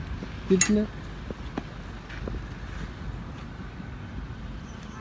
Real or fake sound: real